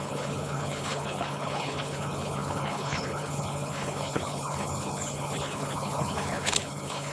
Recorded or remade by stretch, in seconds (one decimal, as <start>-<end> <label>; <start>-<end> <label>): 0.0-7.1 remade